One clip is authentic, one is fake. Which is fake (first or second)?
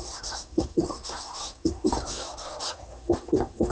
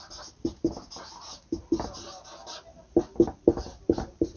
first